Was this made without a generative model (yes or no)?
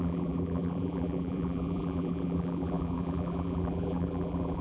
no